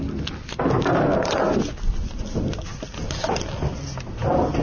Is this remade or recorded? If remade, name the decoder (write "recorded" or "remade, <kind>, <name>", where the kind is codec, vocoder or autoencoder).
recorded